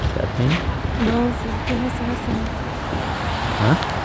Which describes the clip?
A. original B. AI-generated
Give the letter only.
A